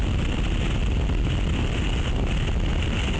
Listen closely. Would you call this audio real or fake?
real